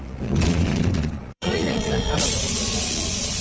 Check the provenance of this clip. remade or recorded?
remade